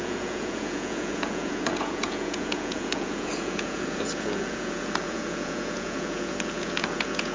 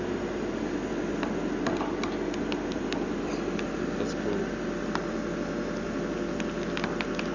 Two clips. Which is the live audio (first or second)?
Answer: second